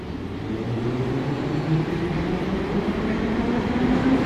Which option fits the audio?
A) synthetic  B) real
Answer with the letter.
B